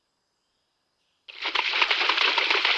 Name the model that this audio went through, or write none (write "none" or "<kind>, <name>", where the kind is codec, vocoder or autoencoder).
vocoder, BigVGAN v2